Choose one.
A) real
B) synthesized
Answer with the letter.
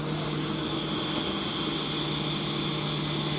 A